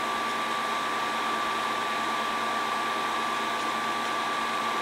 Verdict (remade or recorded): recorded